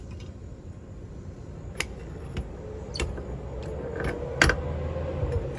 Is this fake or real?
real